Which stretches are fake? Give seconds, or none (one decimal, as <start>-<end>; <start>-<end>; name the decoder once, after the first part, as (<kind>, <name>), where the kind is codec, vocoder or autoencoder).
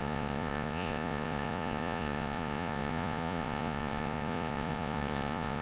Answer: 0.0-5.6 (vocoder, Vocos)